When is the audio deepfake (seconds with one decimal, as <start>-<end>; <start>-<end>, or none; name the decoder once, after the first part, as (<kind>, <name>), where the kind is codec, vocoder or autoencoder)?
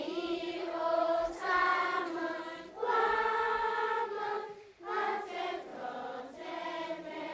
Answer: 0.0-7.3 (vocoder, BigVGAN v2)